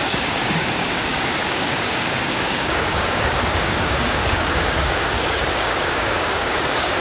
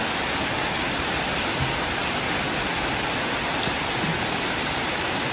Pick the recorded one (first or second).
second